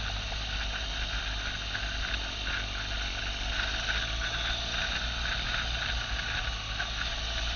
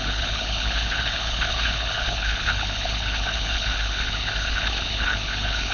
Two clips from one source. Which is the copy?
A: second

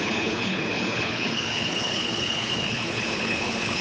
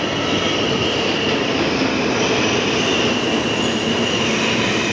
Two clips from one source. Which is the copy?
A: first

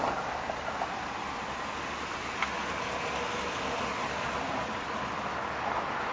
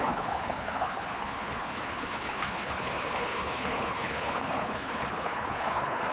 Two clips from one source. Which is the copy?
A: second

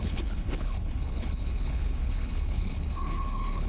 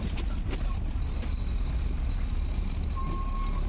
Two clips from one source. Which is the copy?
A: first